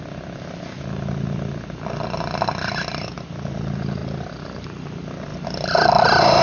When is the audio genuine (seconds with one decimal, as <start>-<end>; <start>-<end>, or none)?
0.0-6.4